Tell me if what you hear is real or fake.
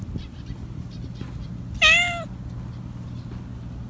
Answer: real